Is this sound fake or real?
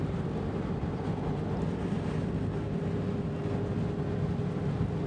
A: real